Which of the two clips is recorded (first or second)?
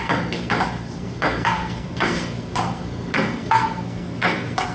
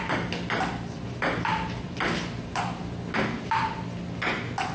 second